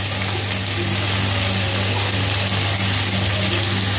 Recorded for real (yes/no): yes